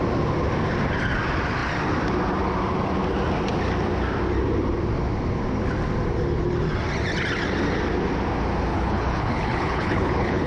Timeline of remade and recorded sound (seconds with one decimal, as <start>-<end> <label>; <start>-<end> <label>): 0.0-8.7 recorded; 8.7-10.5 remade